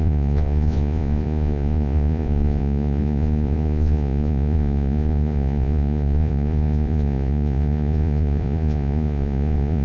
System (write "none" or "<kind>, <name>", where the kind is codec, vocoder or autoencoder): vocoder, Vocos